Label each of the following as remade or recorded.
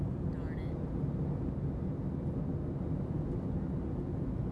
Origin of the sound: recorded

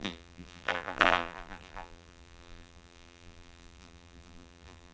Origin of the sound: remade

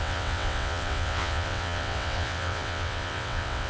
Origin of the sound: remade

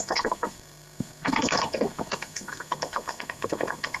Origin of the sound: remade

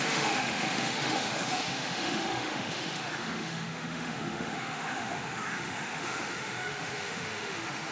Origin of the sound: remade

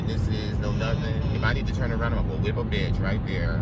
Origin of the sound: recorded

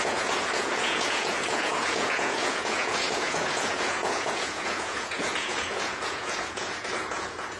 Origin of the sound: remade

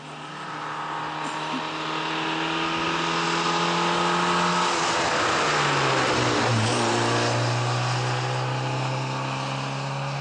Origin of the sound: recorded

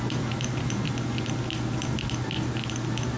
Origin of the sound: recorded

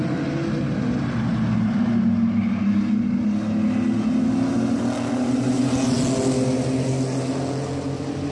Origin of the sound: recorded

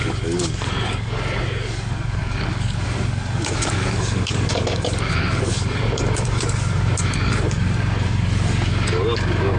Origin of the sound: remade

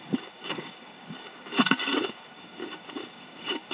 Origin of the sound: remade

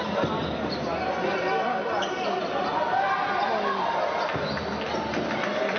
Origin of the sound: recorded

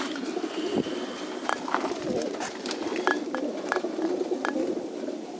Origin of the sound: recorded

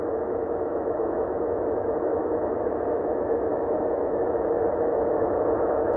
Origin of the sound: remade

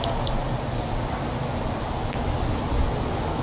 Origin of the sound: recorded